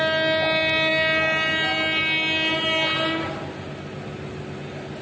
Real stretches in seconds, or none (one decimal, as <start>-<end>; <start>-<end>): 0.0-5.0